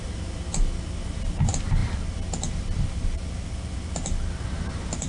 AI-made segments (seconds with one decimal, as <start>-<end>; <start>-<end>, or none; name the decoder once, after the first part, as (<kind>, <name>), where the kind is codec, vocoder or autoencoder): none